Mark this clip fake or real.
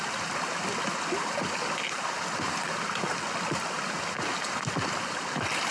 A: real